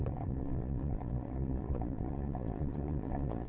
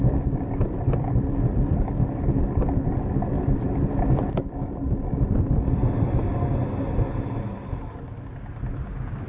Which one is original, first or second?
second